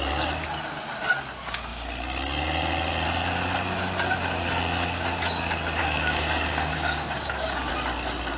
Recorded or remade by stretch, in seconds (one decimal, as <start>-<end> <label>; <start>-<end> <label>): 0.0-5.8 recorded; 5.8-7.7 remade; 7.7-8.4 recorded

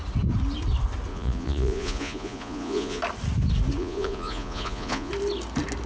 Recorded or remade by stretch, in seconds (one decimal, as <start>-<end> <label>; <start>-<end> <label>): 0.0-1.1 recorded; 1.1-3.0 remade; 3.0-3.8 recorded; 3.8-5.1 remade; 5.1-5.9 recorded

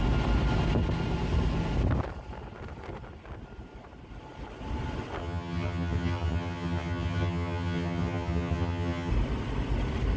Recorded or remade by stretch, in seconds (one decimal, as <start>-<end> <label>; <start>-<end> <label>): 0.0-5.2 recorded; 5.2-9.1 remade; 9.1-10.2 recorded